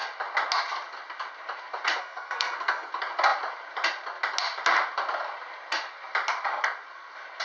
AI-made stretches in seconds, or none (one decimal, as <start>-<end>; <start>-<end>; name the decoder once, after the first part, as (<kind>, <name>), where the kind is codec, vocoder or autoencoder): 2.0-2.9 (codec, SNAC)